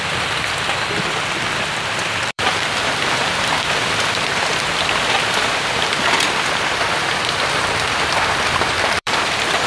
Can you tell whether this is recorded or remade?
remade